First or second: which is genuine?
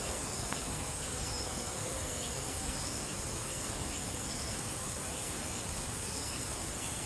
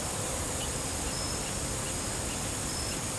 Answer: second